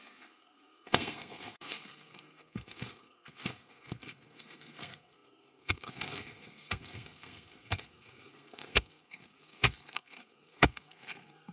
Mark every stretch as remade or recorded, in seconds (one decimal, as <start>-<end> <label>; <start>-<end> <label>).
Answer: 0.0-11.5 remade

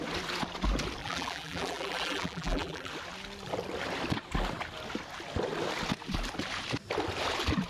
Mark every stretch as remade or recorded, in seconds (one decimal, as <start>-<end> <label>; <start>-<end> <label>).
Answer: 0.0-1.0 recorded; 1.0-2.9 remade; 2.9-7.7 recorded

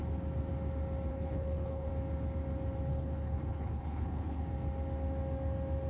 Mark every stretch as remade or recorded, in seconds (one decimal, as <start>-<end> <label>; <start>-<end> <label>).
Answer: 0.0-1.1 recorded; 1.1-1.9 remade; 1.9-2.9 recorded; 2.9-4.4 remade; 4.4-5.9 recorded